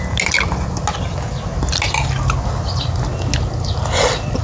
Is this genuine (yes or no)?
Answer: yes